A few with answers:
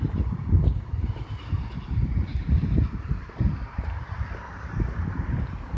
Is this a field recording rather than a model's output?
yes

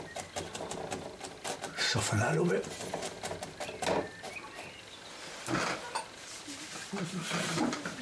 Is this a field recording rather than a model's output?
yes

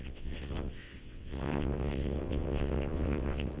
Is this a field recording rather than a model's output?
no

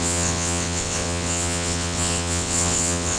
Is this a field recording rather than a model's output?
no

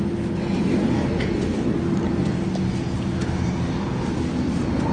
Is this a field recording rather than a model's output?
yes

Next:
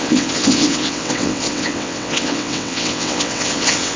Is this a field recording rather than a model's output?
no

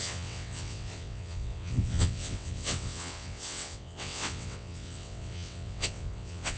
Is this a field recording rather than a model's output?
no